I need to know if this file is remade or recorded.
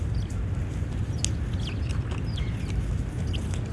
recorded